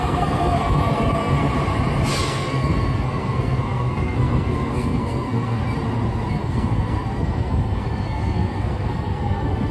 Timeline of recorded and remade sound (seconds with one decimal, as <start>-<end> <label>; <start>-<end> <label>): 0.0-1.5 remade; 1.5-2.1 recorded; 2.1-5.6 remade; 5.6-6.3 recorded; 6.3-9.7 remade